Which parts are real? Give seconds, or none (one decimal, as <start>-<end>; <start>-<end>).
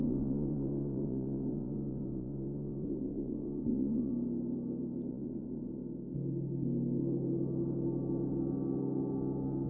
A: 4.1-5.1; 5.8-9.7